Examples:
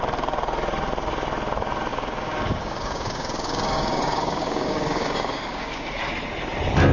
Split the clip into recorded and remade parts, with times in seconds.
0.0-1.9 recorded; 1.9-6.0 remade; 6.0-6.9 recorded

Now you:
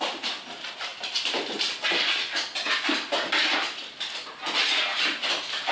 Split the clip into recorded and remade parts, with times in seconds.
0.0-5.7 recorded

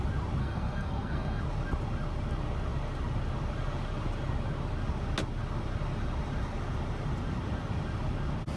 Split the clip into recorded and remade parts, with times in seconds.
0.0-0.4 recorded; 0.4-1.4 remade; 1.4-8.6 recorded

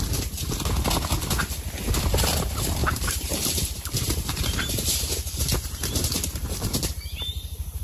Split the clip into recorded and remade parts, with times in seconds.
0.0-2.8 recorded; 2.8-7.8 remade

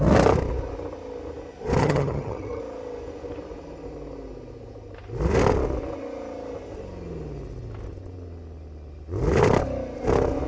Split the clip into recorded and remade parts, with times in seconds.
0.0-1.8 recorded; 1.8-2.6 remade; 2.6-10.5 recorded

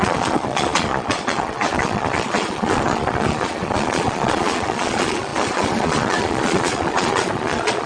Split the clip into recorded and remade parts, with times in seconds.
0.0-7.9 remade

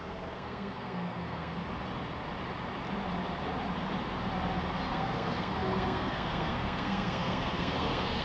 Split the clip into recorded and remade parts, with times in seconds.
0.0-1.6 remade; 1.6-4.9 recorded; 4.9-8.2 remade